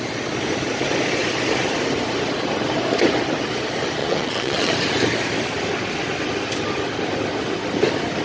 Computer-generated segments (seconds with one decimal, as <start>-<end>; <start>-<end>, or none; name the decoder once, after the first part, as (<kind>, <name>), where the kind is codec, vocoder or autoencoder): 4.0-4.7 (vocoder, Vocos)